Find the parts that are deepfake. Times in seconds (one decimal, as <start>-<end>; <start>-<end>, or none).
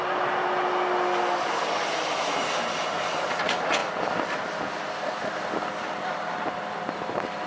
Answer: none